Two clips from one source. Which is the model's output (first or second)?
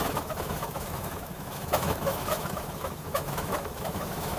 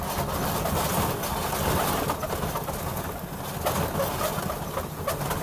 first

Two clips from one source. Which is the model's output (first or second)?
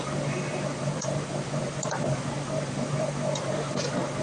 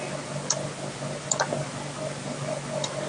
first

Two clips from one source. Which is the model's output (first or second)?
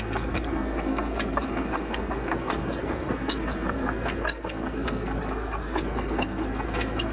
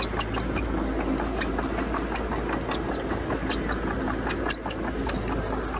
first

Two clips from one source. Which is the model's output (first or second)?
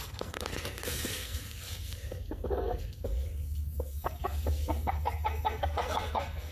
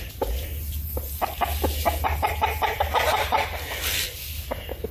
first